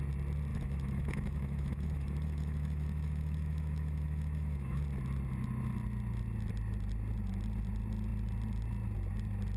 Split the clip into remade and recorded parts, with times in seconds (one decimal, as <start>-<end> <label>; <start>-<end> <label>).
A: 0.0-0.5 recorded; 0.5-4.8 remade; 4.8-9.6 recorded